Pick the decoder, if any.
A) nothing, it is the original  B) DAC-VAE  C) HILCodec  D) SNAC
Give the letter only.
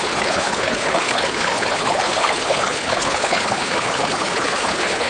C